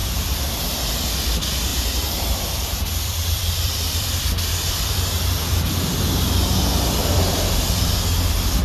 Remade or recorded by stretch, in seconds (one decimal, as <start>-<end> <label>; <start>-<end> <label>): 0.0-1.7 recorded; 1.7-5.6 remade; 5.6-7.0 recorded; 7.0-7.9 remade; 7.9-8.6 recorded